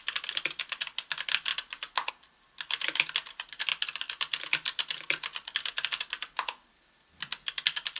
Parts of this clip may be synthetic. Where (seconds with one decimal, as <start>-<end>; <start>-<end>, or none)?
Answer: none